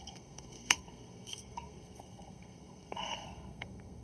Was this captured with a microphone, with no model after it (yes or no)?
no